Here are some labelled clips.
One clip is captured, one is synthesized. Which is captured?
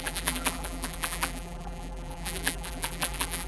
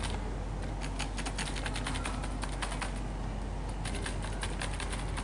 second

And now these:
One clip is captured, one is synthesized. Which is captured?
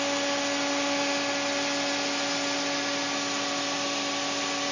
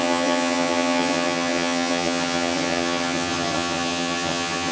first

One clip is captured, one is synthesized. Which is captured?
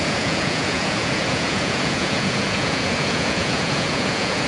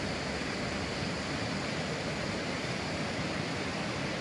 second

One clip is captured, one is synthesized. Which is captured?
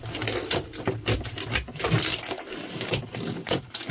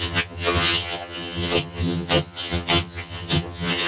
first